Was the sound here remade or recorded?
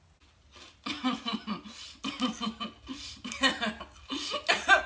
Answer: recorded